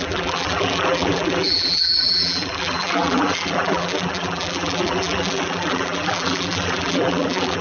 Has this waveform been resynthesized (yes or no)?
yes